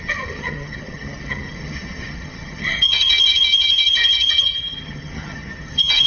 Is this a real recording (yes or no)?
no